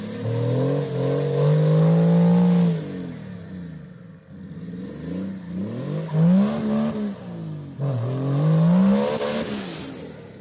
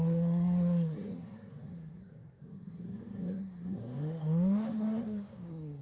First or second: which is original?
first